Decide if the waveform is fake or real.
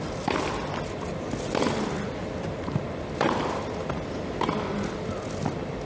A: real